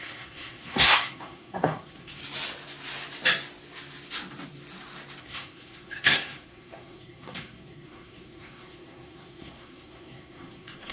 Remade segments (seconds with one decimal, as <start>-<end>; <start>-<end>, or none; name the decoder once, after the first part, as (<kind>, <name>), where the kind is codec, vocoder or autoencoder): 0.0-2.2 (codec, SNAC); 5.2-10.9